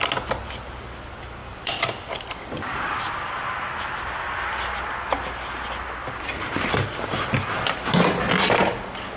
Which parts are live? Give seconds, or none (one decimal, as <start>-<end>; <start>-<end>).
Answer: 0.0-1.4; 3.0-6.0; 6.7-9.2